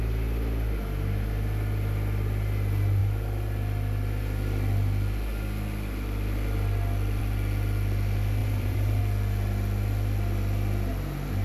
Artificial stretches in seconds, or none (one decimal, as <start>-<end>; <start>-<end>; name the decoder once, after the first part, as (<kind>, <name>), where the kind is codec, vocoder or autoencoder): 8.4-9.0 (vocoder, BigVGAN v2)